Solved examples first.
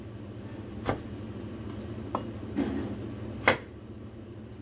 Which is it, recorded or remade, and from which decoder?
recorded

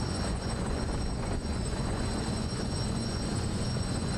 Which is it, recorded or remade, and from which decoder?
remade, vocoder, Vocos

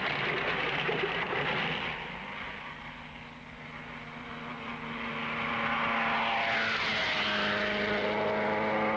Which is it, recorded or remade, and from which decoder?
recorded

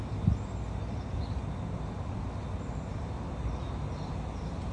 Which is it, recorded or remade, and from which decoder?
recorded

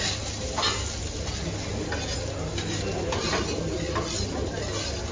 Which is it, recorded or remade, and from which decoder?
recorded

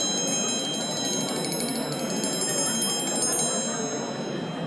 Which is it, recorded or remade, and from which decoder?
recorded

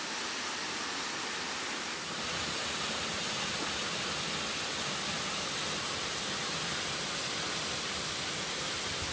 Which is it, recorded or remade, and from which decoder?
recorded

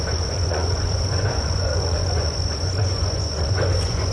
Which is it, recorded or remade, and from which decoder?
remade, vocoder, Vocos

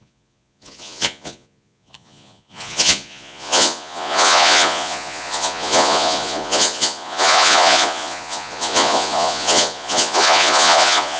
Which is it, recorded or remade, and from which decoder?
remade, vocoder, Vocos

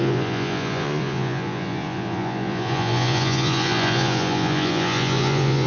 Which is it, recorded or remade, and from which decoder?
remade, vocoder, Vocos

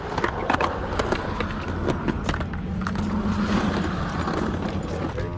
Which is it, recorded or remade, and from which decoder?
recorded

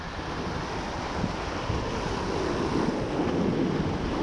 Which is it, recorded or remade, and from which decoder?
recorded